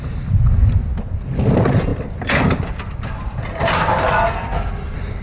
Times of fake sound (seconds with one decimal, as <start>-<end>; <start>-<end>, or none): none